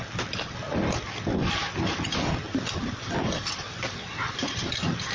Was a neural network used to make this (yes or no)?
no